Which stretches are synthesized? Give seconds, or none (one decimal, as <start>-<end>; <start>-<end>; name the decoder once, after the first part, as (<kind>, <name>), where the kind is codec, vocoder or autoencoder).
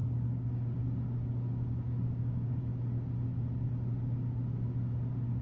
0.0-2.6 (codec, DAC)